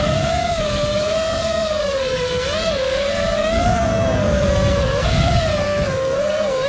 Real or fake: fake